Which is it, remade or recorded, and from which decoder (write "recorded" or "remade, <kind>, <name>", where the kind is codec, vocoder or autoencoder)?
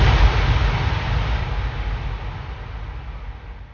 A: recorded